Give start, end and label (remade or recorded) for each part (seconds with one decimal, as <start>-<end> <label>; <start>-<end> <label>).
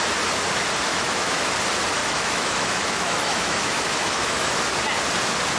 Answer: 0.0-0.9 recorded; 0.9-1.5 remade; 1.5-2.0 recorded; 2.0-4.7 remade; 4.7-5.6 recorded